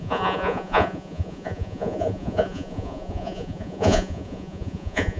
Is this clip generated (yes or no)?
yes